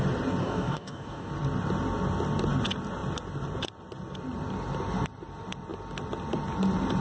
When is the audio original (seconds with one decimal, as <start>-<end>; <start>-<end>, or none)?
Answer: 0.0-0.4; 1.3-7.0